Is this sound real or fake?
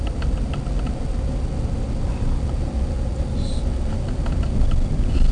real